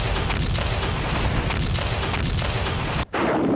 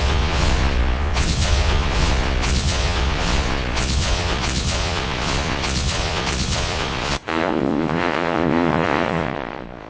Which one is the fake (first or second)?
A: second